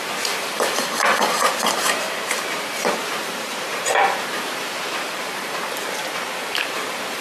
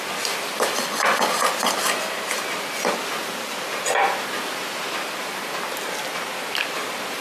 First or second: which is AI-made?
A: first